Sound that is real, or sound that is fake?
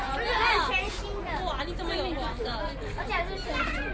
real